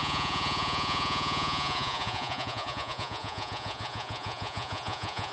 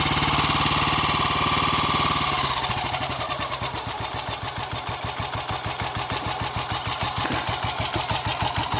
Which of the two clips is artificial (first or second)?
first